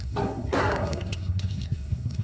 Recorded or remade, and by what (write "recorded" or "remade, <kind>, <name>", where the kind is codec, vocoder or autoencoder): remade, codec, SNAC